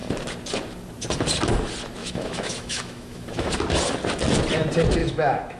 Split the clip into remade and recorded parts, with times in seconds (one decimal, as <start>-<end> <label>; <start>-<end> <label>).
0.0-2.0 recorded; 2.0-3.5 remade; 3.5-5.0 recorded; 5.0-5.6 remade